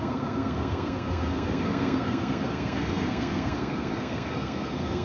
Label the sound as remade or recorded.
remade